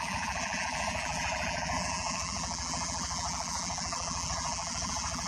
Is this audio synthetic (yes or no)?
yes